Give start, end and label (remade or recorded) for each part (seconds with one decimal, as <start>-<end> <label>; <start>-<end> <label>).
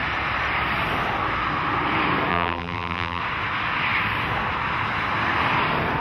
0.0-2.3 recorded; 2.3-3.2 remade; 3.2-6.0 recorded